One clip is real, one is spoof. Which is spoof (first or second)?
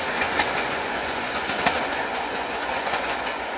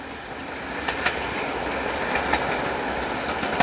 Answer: first